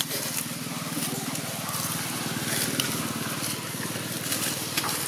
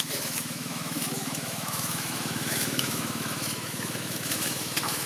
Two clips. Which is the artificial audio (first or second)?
second